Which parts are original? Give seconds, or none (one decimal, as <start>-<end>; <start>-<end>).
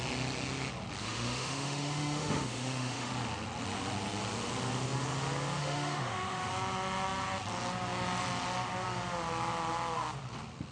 0.0-1.0; 3.1-5.6; 6.5-10.7